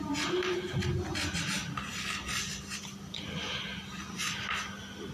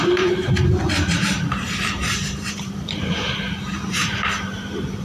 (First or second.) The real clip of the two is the first